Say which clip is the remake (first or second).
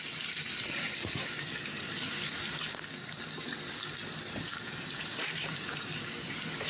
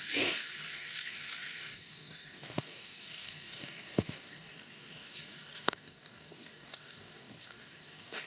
second